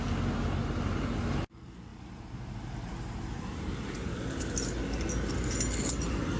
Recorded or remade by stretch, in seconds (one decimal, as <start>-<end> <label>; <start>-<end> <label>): 0.0-1.9 recorded; 1.9-4.1 remade; 4.1-6.4 recorded